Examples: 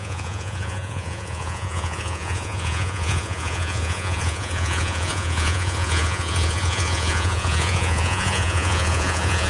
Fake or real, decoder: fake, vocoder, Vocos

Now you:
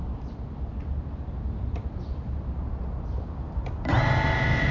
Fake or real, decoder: real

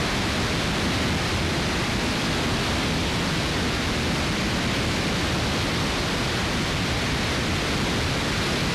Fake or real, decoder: real